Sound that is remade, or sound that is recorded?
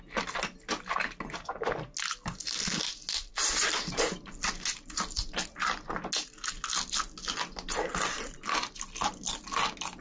recorded